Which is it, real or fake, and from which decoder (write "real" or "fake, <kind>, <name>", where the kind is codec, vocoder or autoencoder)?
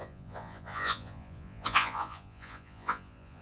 fake, vocoder, Vocos